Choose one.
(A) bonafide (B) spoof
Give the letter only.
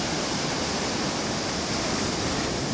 A